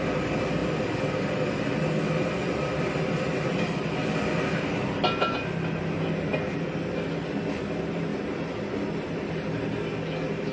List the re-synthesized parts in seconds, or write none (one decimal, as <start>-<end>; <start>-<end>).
none